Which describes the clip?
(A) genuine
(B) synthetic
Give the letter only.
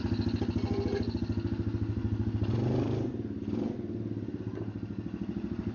A